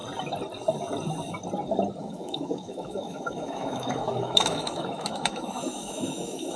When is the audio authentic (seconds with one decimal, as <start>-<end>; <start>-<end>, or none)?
0.0-2.0